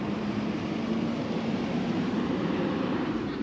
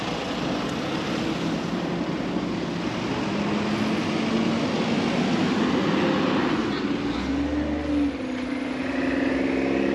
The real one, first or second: second